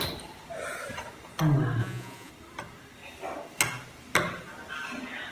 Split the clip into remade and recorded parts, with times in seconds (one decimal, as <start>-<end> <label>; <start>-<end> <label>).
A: 0.0-1.8 recorded; 1.8-2.3 remade; 2.3-5.3 recorded